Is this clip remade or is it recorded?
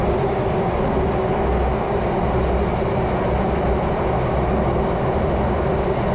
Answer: recorded